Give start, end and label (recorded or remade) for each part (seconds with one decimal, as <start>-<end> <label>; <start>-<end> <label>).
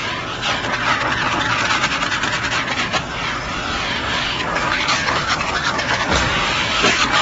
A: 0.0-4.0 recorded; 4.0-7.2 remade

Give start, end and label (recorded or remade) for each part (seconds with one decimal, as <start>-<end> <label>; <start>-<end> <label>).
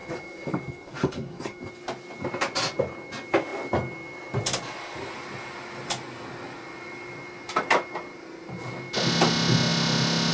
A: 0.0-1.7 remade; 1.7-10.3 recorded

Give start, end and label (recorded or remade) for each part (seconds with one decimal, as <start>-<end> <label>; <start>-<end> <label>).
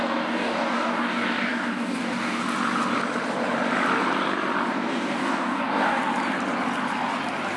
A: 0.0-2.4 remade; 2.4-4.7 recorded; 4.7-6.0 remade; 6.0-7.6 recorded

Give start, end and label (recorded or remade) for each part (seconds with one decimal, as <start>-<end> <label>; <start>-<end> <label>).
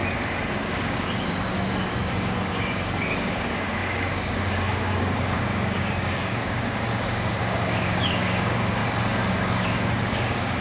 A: 0.0-0.5 recorded; 0.5-8.8 remade; 8.8-9.3 recorded; 9.3-10.6 remade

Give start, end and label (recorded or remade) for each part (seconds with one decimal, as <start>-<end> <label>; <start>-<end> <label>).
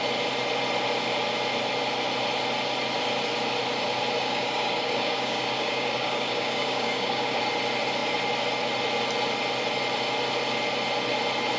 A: 0.0-4.2 recorded; 4.2-7.4 remade; 7.4-11.6 recorded